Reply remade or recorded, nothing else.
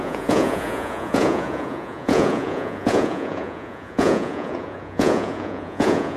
remade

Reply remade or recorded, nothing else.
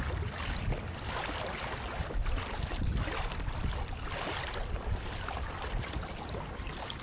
recorded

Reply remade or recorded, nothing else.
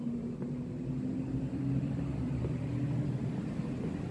recorded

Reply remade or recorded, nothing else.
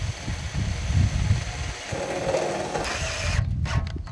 recorded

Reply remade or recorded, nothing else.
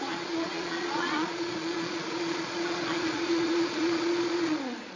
remade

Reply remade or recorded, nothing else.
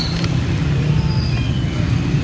recorded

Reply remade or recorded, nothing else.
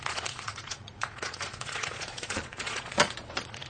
remade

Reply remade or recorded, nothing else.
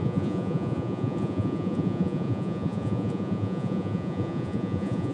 remade